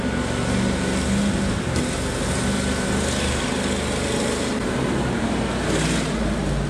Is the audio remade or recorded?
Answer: recorded